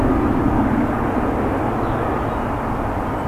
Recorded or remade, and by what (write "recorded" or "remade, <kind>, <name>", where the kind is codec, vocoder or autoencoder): recorded